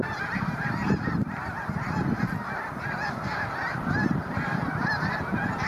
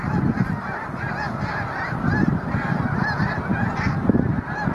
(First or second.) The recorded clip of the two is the second